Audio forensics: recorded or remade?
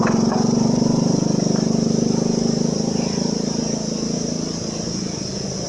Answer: recorded